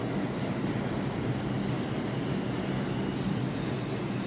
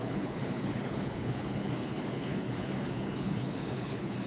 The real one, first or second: first